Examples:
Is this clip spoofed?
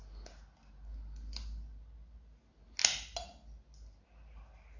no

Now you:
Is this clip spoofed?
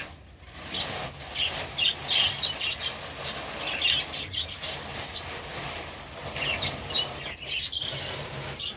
no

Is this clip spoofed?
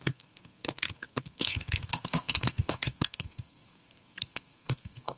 yes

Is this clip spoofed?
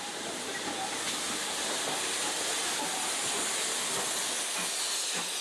no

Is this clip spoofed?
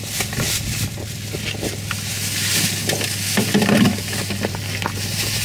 no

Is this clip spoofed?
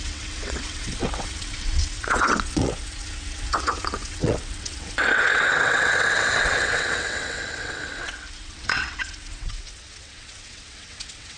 yes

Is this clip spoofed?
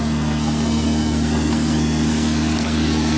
yes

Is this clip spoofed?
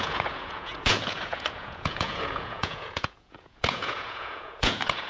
yes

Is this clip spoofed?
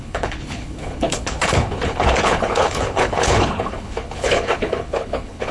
yes